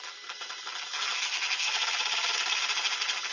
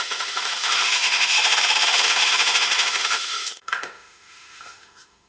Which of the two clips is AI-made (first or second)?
second